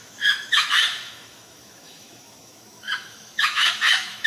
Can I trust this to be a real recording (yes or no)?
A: no